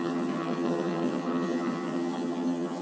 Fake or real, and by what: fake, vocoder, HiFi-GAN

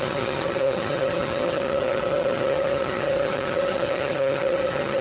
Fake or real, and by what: fake, vocoder, HiFi-GAN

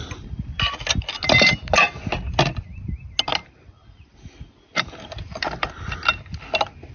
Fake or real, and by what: real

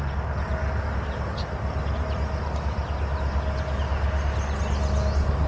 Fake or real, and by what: real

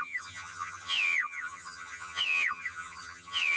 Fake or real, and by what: fake, vocoder, HiFi-GAN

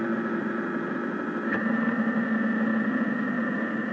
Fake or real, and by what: real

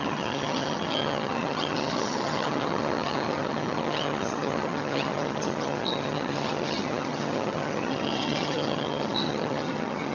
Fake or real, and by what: fake, vocoder, HiFi-GAN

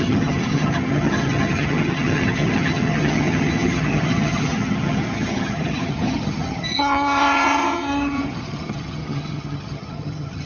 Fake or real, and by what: fake, vocoder, HiFi-GAN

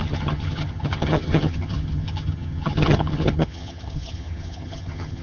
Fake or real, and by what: fake, vocoder, HiFi-GAN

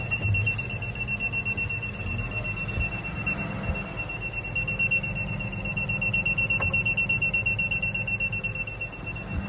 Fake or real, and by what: real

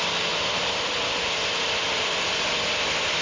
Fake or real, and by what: real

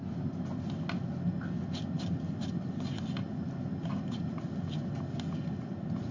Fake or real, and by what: real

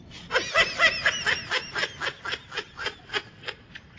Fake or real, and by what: real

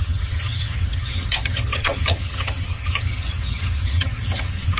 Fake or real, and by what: fake, vocoder, HiFi-GAN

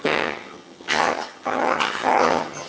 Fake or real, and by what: fake, vocoder, HiFi-GAN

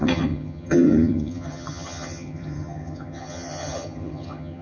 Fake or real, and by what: fake, vocoder, HiFi-GAN